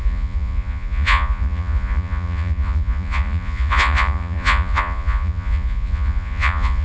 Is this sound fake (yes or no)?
yes